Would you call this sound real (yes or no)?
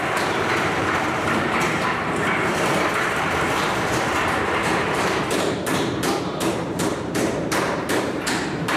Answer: no